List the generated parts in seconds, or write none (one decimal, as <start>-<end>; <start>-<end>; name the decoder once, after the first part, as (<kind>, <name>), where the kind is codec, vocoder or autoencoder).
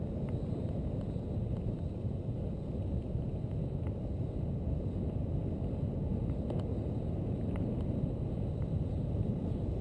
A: none